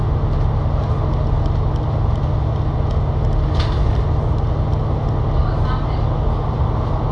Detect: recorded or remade recorded